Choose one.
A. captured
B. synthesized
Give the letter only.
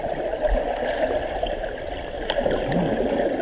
A